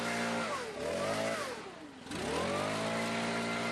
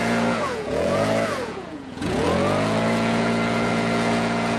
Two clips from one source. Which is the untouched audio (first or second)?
first